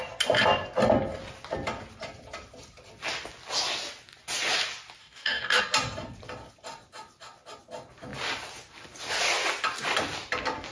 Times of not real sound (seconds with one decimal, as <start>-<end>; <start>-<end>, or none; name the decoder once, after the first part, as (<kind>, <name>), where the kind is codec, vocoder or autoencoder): 5.0-5.6 (codec, DAC)